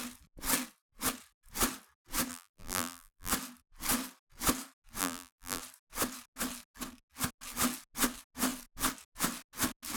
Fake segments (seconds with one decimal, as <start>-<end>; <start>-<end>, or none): 2.3-3.3; 5.0-5.6